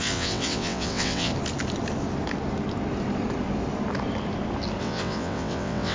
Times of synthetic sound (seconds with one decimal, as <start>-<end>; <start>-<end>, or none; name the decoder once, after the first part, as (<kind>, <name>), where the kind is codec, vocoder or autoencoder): 0.0-1.3 (vocoder, WaveNeXt); 4.8-5.9